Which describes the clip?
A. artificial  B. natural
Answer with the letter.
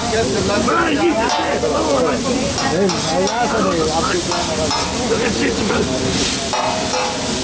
B